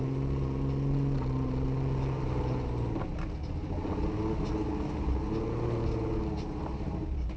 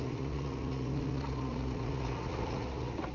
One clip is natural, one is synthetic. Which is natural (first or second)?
first